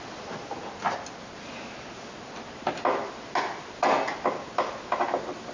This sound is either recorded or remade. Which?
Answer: recorded